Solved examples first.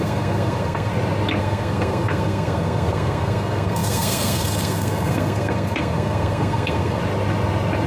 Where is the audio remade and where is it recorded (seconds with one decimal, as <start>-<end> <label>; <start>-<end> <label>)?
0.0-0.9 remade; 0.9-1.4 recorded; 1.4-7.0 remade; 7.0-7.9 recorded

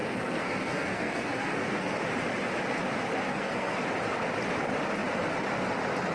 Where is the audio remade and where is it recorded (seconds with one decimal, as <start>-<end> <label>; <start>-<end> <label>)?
0.0-2.0 remade; 2.0-3.3 recorded; 3.3-3.8 remade; 3.8-6.1 recorded

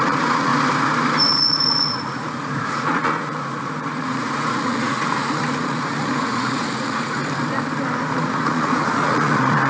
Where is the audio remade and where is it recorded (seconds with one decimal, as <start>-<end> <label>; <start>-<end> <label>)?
0.0-0.5 remade; 0.5-1.3 recorded; 1.3-7.2 remade; 7.2-8.1 recorded; 8.1-9.7 remade

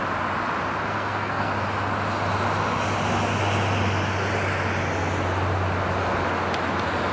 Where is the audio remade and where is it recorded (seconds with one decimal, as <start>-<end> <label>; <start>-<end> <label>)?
0.0-0.9 recorded; 0.9-1.5 remade; 1.5-7.1 recorded